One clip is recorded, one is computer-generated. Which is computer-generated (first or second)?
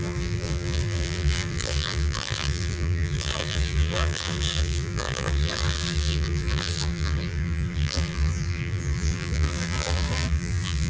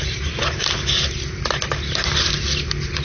first